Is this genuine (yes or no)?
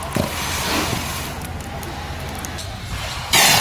yes